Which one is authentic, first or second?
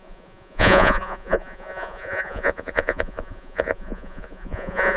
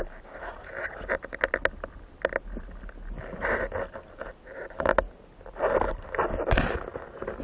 second